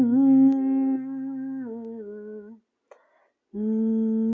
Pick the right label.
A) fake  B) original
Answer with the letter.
B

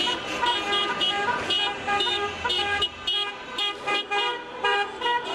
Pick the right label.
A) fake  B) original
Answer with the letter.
A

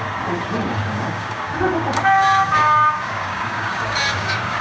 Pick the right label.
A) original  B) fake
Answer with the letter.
B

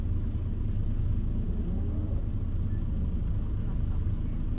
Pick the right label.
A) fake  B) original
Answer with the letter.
B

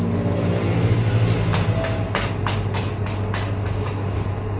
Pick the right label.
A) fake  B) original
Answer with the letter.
B